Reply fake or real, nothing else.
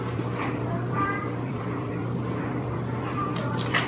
fake